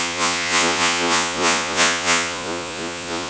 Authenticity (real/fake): fake